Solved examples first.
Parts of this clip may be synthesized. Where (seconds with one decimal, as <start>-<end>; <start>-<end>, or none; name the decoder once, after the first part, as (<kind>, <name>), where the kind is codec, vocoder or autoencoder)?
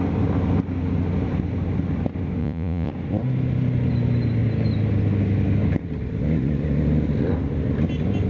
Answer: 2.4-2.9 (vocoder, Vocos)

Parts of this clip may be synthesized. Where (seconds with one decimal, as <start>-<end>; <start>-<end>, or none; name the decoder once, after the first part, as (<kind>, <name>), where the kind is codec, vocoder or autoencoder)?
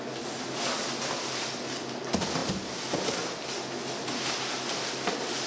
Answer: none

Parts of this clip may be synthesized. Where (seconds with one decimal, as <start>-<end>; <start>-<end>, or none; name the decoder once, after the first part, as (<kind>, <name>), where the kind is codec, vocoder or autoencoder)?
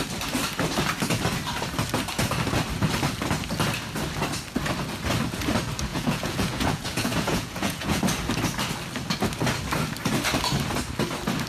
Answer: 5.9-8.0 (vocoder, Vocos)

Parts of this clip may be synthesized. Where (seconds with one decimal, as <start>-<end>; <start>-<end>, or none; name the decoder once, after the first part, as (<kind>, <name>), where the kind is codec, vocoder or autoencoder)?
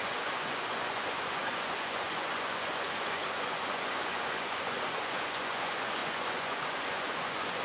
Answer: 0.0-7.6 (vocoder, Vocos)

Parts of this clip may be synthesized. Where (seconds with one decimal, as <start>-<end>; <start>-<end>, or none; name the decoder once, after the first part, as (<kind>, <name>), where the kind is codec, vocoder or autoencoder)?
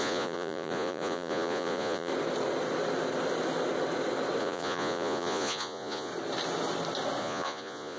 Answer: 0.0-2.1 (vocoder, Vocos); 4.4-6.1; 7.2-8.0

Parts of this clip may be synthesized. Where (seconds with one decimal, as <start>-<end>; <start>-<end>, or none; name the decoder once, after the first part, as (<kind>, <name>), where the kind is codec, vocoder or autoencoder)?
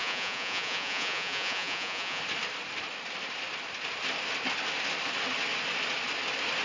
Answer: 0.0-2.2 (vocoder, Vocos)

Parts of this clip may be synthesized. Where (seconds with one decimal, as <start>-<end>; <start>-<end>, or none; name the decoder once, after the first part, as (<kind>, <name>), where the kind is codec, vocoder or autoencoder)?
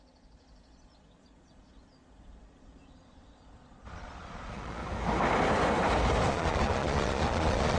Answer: 0.0-4.8 (vocoder, Vocos); 6.3-7.8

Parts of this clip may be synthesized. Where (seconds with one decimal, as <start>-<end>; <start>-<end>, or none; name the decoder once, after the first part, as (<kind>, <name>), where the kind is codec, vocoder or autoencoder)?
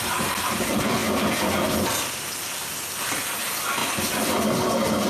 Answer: none